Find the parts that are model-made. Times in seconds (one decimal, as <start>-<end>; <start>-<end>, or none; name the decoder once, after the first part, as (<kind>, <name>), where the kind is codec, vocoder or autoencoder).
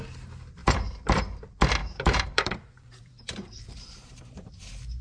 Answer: 0.6-1.4 (vocoder, BigVGAN v2); 1.8-4.5